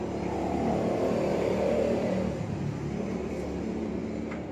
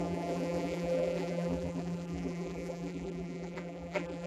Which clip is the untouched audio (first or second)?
first